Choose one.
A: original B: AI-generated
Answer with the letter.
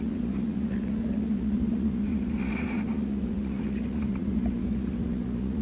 B